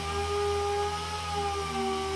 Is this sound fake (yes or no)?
no